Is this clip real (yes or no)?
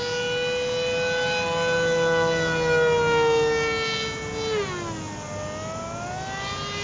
yes